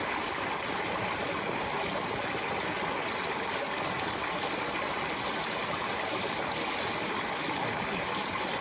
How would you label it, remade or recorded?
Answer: recorded